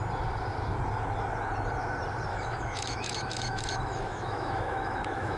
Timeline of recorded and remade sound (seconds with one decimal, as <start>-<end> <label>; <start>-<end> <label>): 0.0-2.3 recorded; 2.3-5.4 remade